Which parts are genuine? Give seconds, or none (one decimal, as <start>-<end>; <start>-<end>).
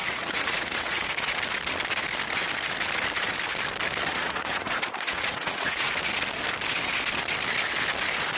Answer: 1.3-4.1; 5.9-8.4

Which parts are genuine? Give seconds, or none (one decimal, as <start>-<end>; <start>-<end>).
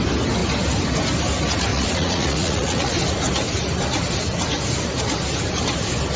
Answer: 0.0-1.7; 2.9-6.2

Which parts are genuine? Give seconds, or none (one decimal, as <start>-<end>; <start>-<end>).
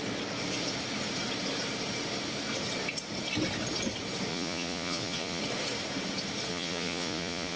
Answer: 0.0-4.3; 5.4-6.5